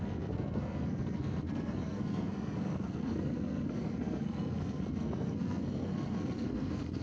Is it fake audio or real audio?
fake